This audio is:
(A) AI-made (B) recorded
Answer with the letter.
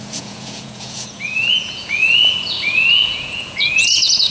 A